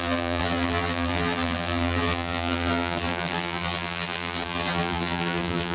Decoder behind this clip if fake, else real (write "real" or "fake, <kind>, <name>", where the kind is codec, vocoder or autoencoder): fake, vocoder, BigVGAN v2